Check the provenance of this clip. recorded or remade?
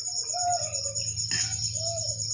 recorded